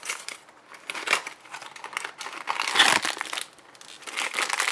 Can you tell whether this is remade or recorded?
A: recorded